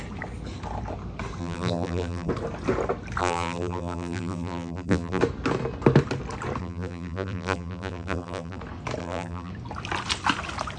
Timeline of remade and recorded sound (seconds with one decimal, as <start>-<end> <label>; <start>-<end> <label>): 0.0-1.4 recorded; 1.4-2.3 remade; 2.3-3.2 recorded; 3.2-5.2 remade; 5.2-6.6 recorded; 6.6-8.6 remade; 8.6-9.0 recorded; 9.0-9.5 remade; 9.5-10.8 recorded